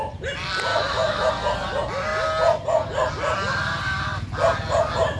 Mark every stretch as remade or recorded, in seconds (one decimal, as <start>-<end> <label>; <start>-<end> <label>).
0.0-0.7 recorded; 0.7-1.3 remade; 1.3-5.2 recorded